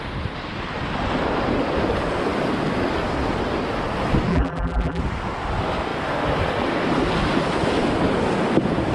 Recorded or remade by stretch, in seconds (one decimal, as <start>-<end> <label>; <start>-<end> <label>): 0.0-4.3 recorded; 4.3-5.0 remade; 5.0-8.9 recorded